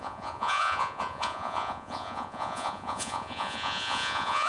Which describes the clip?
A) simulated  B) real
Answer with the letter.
A